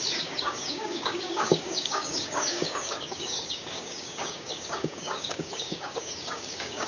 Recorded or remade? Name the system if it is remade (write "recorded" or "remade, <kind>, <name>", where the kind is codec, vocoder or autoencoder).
remade, codec, DAC